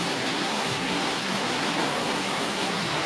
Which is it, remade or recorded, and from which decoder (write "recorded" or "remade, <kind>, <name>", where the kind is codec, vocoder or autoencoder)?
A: remade, codec, SNAC